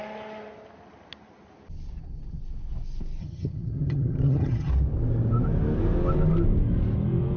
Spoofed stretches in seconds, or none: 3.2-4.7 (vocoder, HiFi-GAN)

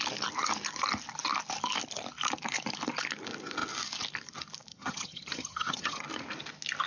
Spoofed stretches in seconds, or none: 4.7-6.0 (vocoder, HiFi-GAN)

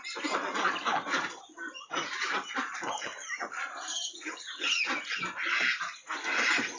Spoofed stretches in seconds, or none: 3.9-4.8 (vocoder, HiFi-GAN)

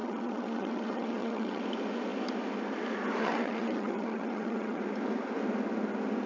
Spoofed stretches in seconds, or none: 0.0-1.6 (vocoder, HiFi-GAN); 3.2-4.8

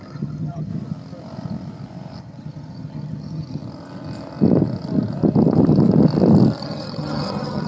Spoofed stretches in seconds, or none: 0.0-0.7 (vocoder, HiFi-GAN); 2.2-3.6; 6.6-7.7

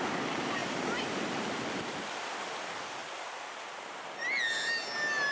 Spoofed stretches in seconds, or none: none